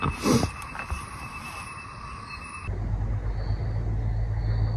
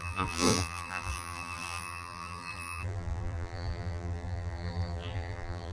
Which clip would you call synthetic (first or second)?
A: second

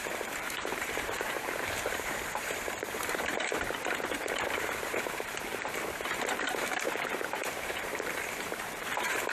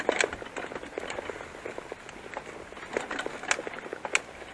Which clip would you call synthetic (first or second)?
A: first